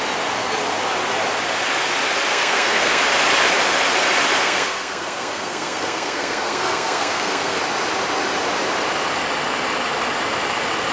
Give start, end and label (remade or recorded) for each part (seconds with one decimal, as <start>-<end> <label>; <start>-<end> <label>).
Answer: 0.0-2.3 recorded; 2.3-3.0 remade; 3.0-4.4 recorded; 4.4-7.6 remade; 7.6-10.9 recorded